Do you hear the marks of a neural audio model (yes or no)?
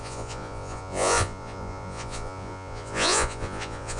yes